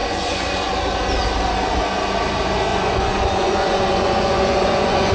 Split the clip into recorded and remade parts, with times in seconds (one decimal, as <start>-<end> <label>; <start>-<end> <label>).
0.0-0.7 remade; 0.7-2.7 recorded; 2.7-5.1 remade